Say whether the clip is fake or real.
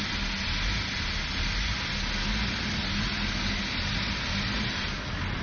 real